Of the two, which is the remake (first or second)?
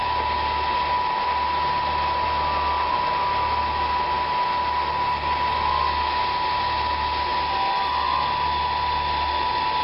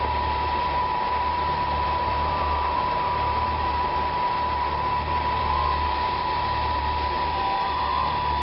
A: second